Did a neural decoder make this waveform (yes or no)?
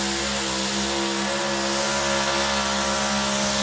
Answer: no